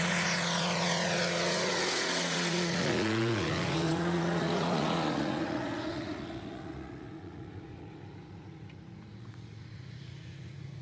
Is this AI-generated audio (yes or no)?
yes